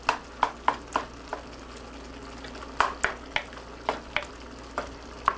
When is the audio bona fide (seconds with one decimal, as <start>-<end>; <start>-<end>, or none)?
0.0-5.4